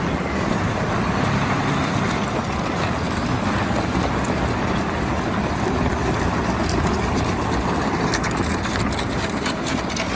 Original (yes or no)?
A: yes